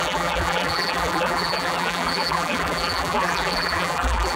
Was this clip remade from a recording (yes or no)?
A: yes